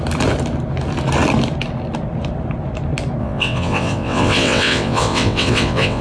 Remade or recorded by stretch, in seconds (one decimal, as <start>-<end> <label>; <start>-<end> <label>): 0.0-3.2 recorded; 3.2-6.0 remade